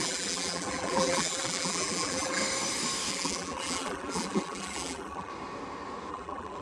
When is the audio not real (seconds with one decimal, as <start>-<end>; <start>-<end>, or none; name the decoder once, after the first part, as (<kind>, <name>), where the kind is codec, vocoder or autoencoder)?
0.0-2.4 (vocoder, BigVGAN v2); 3.1-5.3; 6.1-6.6